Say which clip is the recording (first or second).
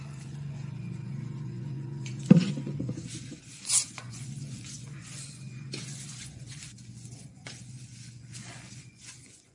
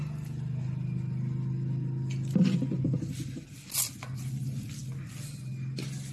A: second